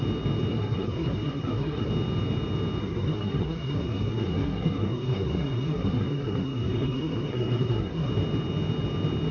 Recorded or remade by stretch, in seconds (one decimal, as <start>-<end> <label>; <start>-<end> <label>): 0.0-0.5 recorded; 0.5-1.9 remade; 1.9-2.8 recorded; 2.8-8.1 remade; 8.1-9.3 recorded